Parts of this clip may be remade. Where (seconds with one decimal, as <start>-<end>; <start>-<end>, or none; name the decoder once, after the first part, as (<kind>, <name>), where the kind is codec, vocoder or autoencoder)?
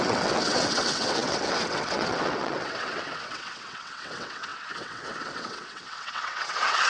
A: 0.0-6.9 (vocoder, WaveNeXt)